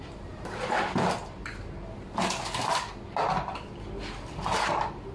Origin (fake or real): real